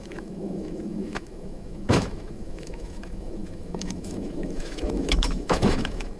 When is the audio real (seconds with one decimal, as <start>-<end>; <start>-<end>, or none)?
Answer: none